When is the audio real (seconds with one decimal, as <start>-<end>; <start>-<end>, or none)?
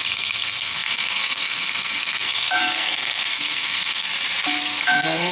4.1-4.6